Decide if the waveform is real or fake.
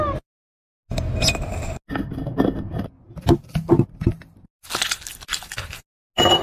real